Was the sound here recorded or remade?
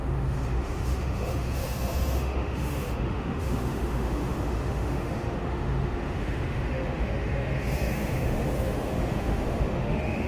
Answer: remade